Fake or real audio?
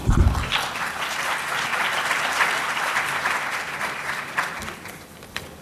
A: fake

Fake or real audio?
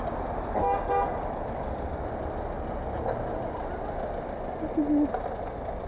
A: real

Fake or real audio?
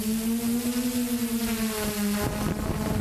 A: real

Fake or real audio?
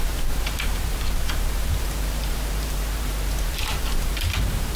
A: fake